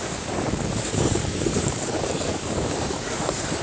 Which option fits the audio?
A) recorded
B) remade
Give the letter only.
B